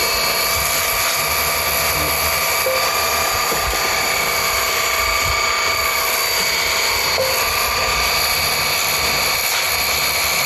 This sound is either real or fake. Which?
real